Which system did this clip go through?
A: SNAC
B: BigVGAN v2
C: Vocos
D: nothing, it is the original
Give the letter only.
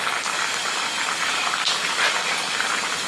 D